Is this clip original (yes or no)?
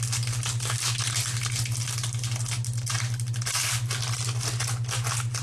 yes